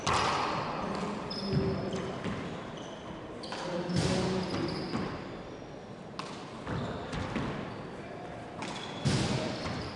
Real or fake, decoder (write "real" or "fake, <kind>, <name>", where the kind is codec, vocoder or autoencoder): real